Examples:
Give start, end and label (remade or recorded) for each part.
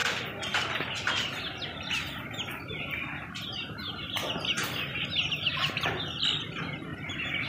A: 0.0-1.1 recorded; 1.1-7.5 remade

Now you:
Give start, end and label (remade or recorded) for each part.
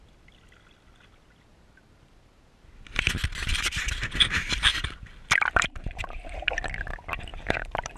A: 0.0-3.5 recorded; 3.5-6.4 remade; 6.4-7.3 recorded; 7.3-8.0 remade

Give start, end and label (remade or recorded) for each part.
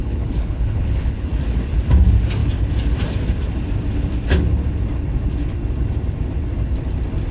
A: 0.0-1.3 remade; 1.3-7.3 recorded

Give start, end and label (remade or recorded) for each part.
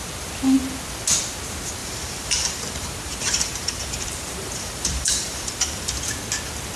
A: 0.0-1.8 recorded; 1.8-5.9 remade; 5.9-6.8 recorded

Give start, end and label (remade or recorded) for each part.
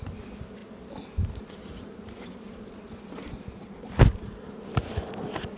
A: 0.0-5.6 recorded